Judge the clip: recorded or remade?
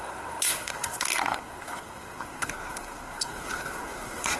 remade